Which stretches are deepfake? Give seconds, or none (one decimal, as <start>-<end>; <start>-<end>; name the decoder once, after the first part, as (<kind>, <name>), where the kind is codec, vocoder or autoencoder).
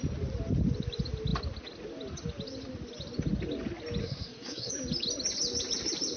4.0-4.7 (codec, SNAC)